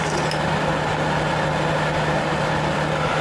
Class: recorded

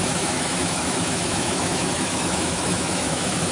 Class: remade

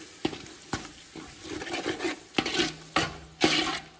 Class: recorded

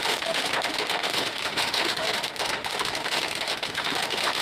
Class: remade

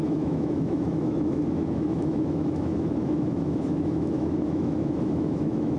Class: remade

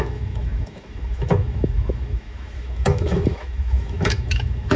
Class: remade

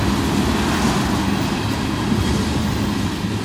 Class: recorded